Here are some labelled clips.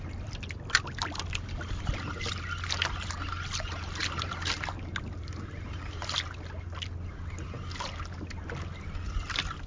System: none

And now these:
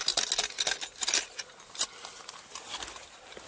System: none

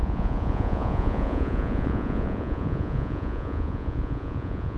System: vocoder, Vocos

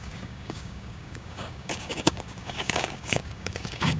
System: codec, DAC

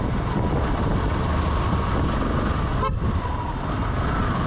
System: none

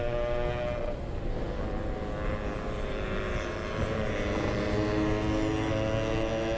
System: none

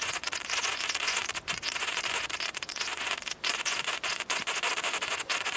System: vocoder, Vocos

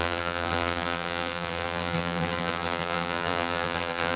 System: vocoder, BigVGAN v2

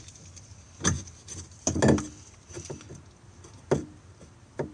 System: none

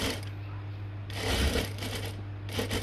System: none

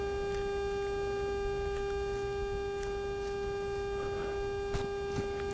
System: none